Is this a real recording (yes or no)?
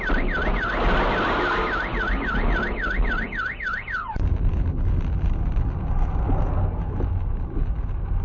yes